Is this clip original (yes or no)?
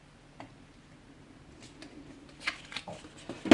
yes